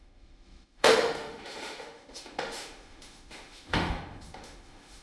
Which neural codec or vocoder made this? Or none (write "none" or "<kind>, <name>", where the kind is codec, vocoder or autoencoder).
autoencoder, DAC-VAE